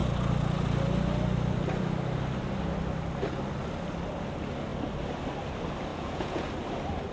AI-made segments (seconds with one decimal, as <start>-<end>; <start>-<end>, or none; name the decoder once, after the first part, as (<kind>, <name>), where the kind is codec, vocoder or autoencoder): 5.9-6.5 (vocoder, Vocos)